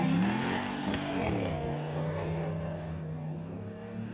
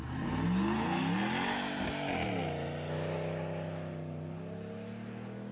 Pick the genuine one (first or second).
second